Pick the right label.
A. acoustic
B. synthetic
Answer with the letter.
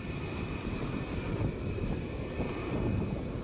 A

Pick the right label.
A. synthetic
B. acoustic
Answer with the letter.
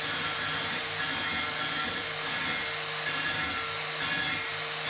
B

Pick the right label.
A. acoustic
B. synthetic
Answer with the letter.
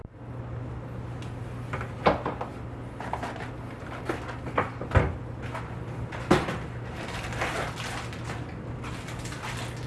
A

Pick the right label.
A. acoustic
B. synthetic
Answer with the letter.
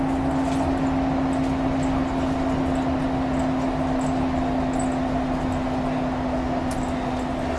A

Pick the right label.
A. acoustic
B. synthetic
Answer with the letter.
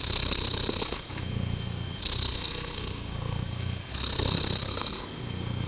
B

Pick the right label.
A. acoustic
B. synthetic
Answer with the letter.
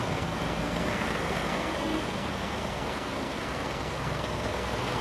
B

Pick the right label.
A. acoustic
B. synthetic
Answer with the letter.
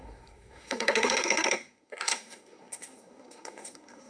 B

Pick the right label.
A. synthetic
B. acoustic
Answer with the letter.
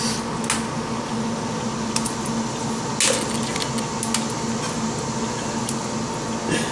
B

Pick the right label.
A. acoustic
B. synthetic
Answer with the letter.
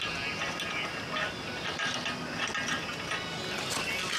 A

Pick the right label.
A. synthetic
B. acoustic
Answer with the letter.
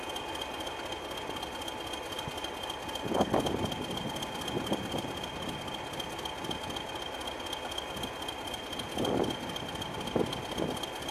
B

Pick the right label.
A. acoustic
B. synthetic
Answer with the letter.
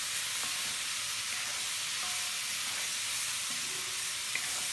A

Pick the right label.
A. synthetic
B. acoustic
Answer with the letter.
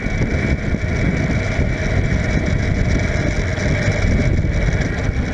B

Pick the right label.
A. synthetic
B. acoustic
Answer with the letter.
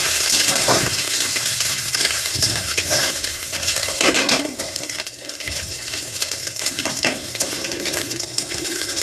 A